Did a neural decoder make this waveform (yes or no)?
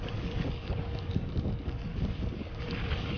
yes